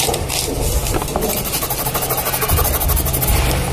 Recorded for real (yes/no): yes